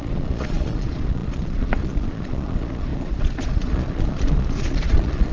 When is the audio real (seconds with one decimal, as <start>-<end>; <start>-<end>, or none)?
none